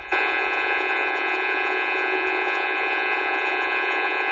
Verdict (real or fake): fake